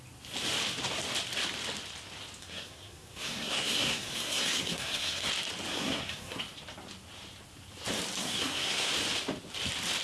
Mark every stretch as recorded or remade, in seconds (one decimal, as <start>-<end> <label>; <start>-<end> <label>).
0.0-2.4 recorded; 2.4-5.3 remade; 5.3-5.7 recorded; 5.7-6.4 remade; 6.4-8.2 recorded; 8.2-8.9 remade; 8.9-10.0 recorded